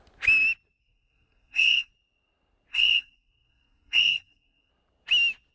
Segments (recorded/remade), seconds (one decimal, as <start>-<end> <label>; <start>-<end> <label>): 0.0-0.8 recorded; 0.8-1.9 remade; 1.9-2.7 recorded; 2.7-4.7 remade; 4.7-5.5 recorded